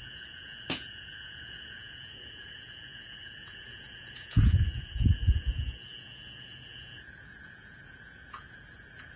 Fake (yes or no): yes